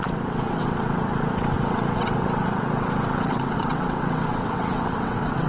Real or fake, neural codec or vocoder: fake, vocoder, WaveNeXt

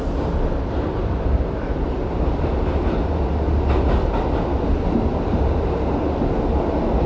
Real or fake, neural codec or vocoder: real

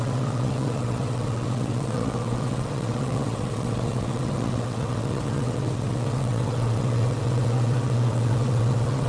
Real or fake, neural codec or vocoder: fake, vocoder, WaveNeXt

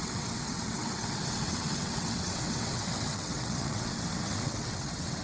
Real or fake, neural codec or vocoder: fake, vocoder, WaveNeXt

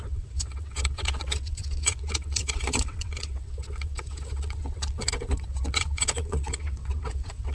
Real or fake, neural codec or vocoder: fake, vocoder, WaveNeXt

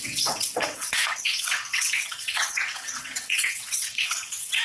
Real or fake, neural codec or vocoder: fake, vocoder, WaveNeXt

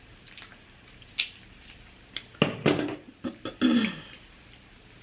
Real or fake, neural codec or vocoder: real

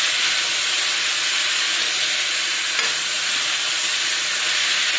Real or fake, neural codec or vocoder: real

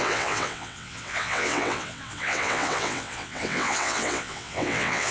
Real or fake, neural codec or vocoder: fake, vocoder, WaveNeXt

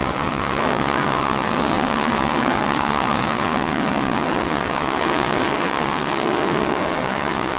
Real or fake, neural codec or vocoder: fake, vocoder, WaveNeXt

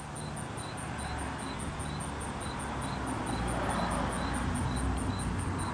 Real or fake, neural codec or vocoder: real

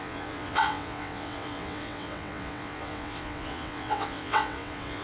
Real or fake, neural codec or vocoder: fake, vocoder, WaveNeXt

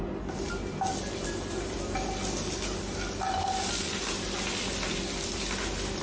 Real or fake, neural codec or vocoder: real